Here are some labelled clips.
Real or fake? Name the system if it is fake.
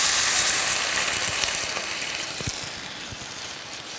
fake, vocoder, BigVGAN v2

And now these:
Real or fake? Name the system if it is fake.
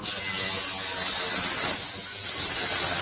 real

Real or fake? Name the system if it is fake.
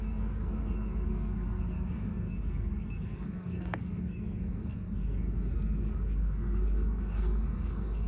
fake, codec, SNAC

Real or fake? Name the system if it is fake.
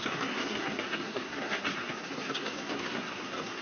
fake, codec, SNAC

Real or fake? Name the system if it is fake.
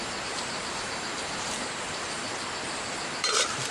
fake, vocoder, BigVGAN v2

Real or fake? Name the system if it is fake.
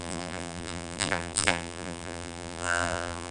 fake, vocoder, BigVGAN v2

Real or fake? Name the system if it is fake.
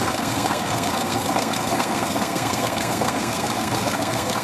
fake, codec, SNAC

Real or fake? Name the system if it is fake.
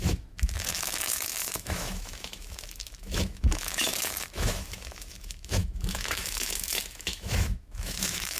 fake, autoencoder, DAC-VAE